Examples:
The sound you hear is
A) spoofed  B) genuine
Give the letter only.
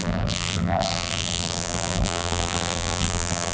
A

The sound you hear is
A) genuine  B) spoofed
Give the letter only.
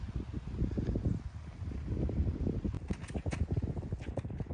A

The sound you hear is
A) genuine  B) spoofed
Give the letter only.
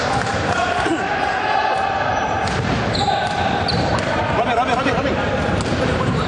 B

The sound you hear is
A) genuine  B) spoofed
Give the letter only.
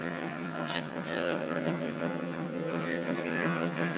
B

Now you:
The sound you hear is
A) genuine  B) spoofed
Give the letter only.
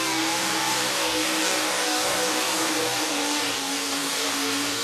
B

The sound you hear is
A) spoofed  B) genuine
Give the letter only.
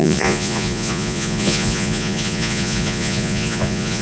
A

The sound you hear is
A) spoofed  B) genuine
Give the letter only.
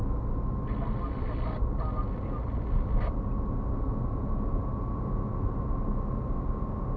B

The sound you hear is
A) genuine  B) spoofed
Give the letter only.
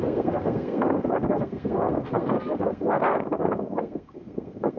B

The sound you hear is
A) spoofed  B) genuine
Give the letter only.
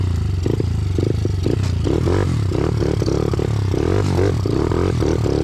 B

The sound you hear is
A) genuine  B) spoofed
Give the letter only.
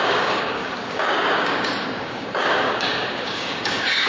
B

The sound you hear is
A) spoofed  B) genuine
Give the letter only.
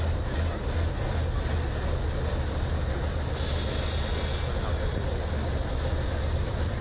B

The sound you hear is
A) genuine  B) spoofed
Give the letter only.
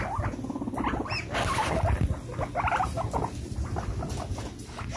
A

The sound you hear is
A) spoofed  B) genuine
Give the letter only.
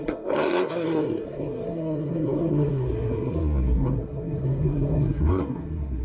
A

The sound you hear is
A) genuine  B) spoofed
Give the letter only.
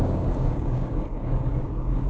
B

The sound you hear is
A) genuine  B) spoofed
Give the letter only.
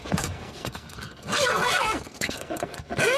B